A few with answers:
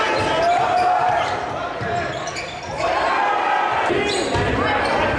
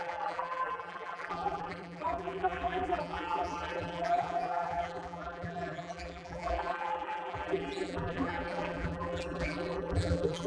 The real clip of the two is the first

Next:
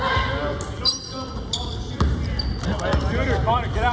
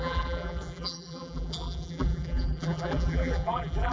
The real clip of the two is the first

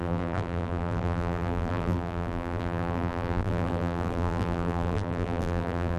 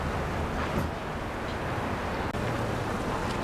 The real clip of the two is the second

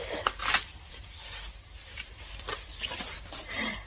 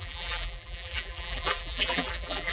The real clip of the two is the first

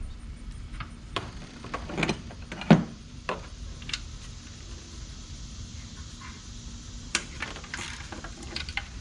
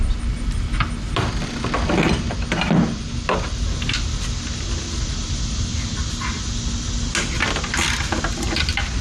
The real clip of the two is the second